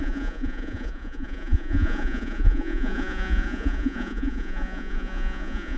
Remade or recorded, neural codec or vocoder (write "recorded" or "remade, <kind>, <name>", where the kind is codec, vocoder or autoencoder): remade, vocoder, Vocos